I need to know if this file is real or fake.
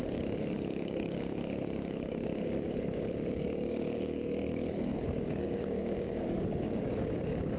fake